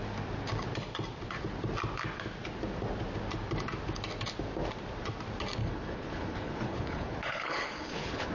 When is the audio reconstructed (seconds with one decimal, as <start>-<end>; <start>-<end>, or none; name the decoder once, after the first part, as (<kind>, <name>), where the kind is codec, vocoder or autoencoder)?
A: 5.6-8.3 (codec, HILCodec)